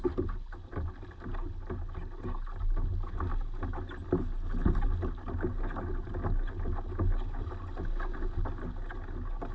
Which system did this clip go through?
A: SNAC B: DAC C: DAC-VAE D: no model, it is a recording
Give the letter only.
D